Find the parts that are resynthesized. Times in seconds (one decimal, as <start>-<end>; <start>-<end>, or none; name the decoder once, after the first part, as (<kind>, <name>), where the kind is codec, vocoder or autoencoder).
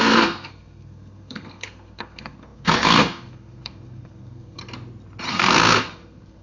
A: 0.0-4.6 (codec, SNAC); 5.3-6.4